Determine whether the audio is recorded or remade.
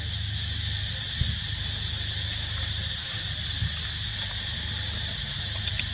recorded